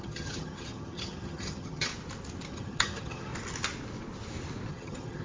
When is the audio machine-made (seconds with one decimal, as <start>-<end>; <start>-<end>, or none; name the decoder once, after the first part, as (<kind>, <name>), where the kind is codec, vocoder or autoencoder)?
0.0-1.9 (vocoder, HiFi-GAN); 2.5-3.3; 4.7-5.2

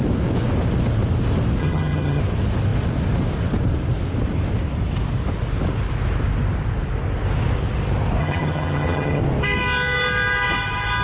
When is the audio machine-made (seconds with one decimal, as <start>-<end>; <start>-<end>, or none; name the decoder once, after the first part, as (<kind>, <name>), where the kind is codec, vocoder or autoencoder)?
1.6-2.2 (vocoder, HiFi-GAN); 8.2-9.2

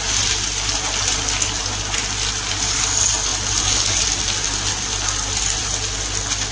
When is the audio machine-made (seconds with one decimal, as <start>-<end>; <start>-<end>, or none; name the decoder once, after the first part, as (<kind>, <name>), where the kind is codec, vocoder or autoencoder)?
none

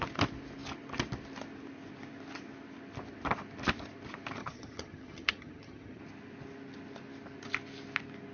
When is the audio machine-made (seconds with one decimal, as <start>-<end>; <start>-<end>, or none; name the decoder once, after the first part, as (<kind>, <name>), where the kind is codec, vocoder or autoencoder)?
4.4-6.0 (vocoder, HiFi-GAN)

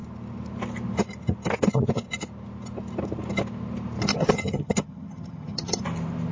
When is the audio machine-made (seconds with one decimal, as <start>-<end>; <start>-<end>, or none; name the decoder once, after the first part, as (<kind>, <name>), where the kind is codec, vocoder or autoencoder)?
4.1-5.8 (vocoder, HiFi-GAN)